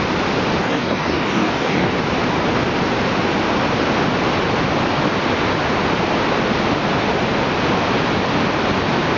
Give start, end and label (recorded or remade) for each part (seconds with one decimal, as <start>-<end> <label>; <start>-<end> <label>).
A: 0.0-0.6 recorded; 0.6-1.9 remade; 1.9-9.2 recorded